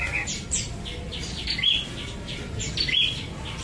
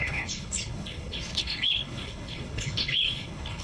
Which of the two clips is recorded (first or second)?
first